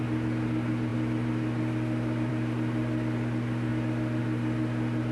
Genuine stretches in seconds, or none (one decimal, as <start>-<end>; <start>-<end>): 0.0-5.1